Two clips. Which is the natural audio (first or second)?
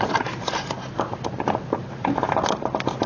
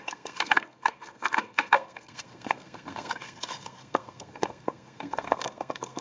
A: first